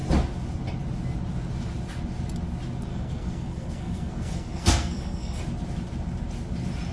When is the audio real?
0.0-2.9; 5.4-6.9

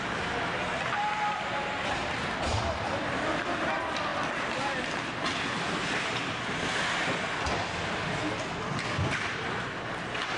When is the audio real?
0.0-10.4

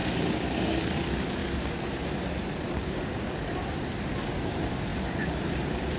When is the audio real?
0.8-6.0

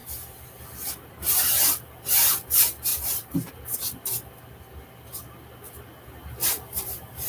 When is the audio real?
0.6-2.9; 3.5-6.4

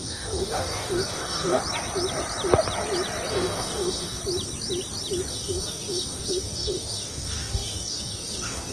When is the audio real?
1.6-3.3; 4.2-5.3

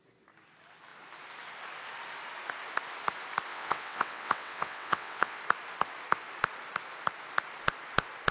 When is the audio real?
0.0-3.5; 5.4-8.3